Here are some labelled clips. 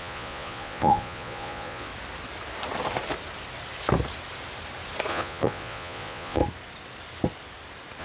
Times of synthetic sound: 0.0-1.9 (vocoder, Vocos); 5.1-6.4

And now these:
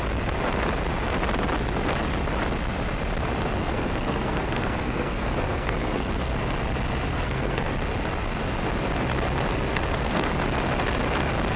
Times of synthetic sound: 3.6-6.3 (codec, SNAC); 7.1-7.7; 9.7-10.3

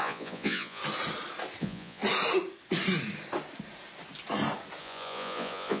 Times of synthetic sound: 0.0-0.8 (vocoder, Vocos); 1.6-2.0; 4.8-5.8